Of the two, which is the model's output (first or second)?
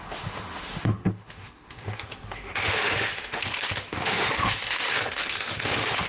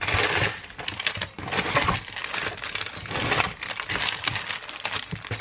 first